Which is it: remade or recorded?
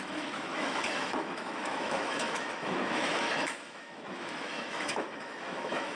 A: remade